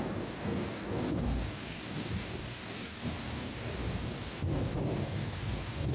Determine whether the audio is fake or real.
fake